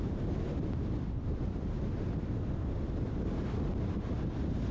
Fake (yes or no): no